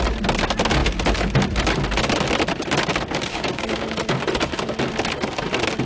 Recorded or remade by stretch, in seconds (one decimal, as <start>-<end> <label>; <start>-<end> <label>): 0.0-3.3 recorded; 3.3-4.0 remade; 4.0-5.9 recorded